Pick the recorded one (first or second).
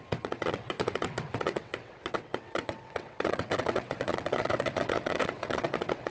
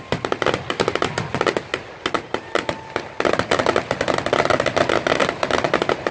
second